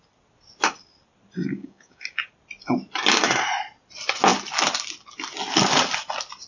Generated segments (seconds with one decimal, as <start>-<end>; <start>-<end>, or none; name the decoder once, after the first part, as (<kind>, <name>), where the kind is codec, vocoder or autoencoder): 1.5-2.3 (codec, DAC)